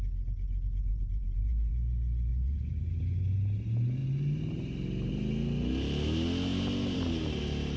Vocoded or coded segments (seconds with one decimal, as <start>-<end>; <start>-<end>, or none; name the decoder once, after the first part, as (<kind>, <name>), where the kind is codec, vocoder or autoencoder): 0.9-1.7 (vocoder, BigVGAN v2); 2.3-3.0; 6.5-7.8